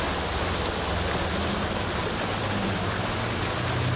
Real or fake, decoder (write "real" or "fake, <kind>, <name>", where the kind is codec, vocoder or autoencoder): real